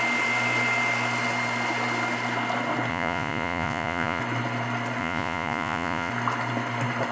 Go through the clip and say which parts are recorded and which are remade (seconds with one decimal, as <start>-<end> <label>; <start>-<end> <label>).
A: 0.0-2.9 recorded; 2.9-4.2 remade; 4.2-5.0 recorded; 5.0-6.1 remade; 6.1-7.1 recorded